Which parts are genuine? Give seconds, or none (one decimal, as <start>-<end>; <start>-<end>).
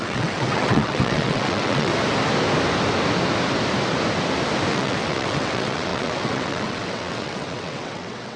1.9-4.7